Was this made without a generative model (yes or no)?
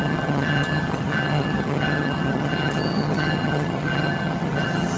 no